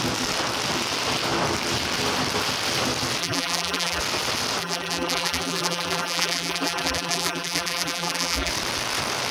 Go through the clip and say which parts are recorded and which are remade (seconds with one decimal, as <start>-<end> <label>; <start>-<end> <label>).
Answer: 0.0-3.2 recorded; 3.2-4.0 remade; 4.0-4.6 recorded; 4.6-8.5 remade; 8.5-9.3 recorded